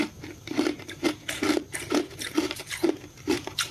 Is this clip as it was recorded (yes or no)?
no